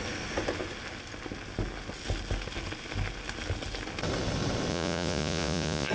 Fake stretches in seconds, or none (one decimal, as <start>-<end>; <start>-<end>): 4.7-5.9